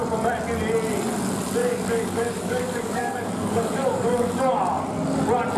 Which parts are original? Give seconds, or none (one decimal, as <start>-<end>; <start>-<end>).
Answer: 0.0-1.6; 4.6-5.6